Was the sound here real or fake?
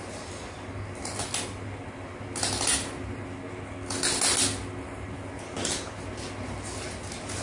real